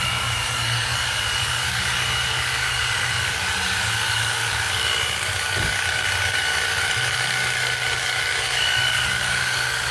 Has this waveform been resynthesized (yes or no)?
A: yes